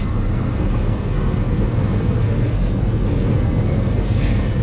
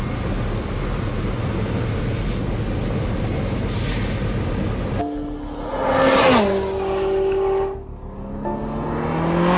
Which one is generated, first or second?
first